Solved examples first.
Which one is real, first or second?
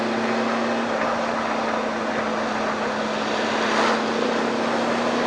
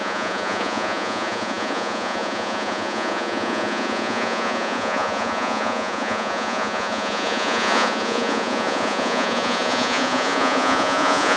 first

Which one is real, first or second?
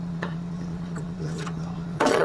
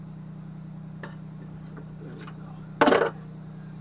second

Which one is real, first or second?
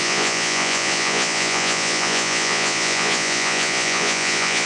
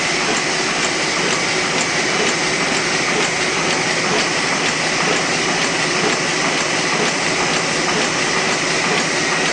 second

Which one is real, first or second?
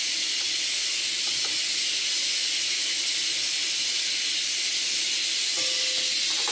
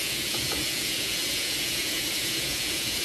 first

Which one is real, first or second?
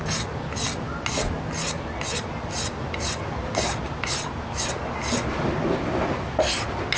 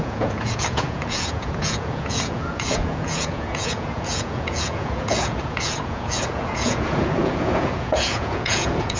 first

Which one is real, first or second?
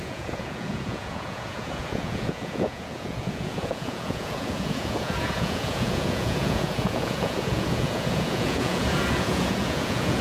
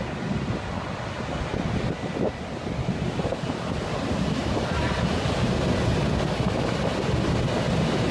second